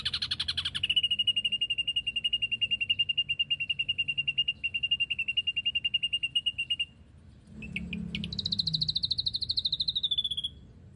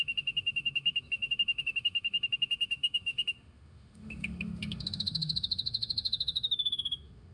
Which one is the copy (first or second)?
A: second